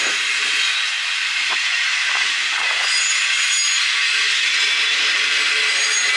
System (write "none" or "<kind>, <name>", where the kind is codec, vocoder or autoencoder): none